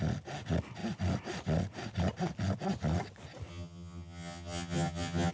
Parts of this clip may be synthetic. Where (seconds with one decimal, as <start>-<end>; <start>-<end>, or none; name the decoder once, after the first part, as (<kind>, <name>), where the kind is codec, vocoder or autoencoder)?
3.5-5.3 (vocoder, HiFi-GAN)